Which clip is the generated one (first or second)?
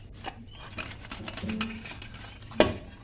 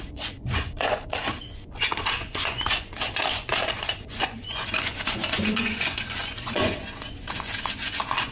second